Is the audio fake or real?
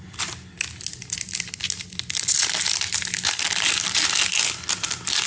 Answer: real